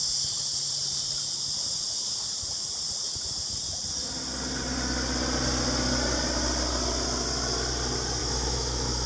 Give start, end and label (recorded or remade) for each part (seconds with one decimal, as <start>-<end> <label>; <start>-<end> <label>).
0.0-8.2 recorded; 8.2-9.1 remade